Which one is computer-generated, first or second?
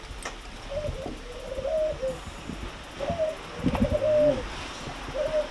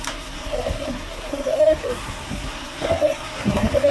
second